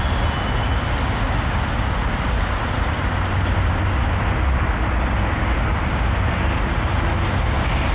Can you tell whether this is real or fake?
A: real